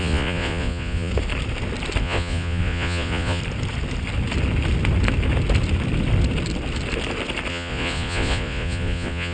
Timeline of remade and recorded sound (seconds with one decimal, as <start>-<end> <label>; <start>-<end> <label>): 0.0-1.1 remade; 1.1-2.0 recorded; 2.0-3.4 remade; 3.4-7.5 recorded; 7.5-9.3 remade